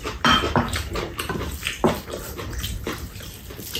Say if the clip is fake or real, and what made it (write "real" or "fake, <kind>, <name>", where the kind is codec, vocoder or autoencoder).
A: real